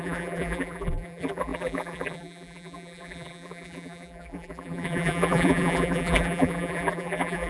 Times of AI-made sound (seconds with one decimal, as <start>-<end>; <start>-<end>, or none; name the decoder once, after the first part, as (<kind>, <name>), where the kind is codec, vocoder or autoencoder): 0.0-7.5 (vocoder, BigVGAN v2)